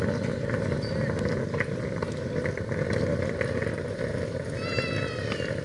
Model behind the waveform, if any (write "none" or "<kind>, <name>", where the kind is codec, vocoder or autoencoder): none